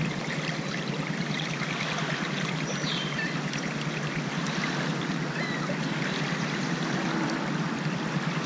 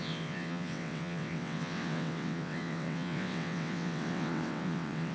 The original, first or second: first